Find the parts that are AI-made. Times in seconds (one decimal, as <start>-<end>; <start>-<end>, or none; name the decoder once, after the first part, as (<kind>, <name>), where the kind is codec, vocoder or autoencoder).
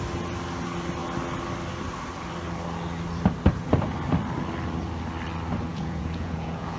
5.7-6.8 (vocoder, Vocos)